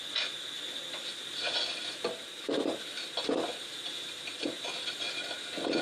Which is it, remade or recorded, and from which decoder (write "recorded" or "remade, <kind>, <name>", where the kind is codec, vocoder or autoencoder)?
recorded